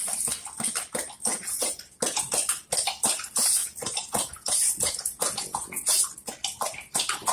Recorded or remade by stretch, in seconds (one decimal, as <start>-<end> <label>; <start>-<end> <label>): 0.0-1.3 recorded; 1.3-2.2 remade; 2.2-3.6 recorded; 3.6-5.9 remade; 5.9-7.3 recorded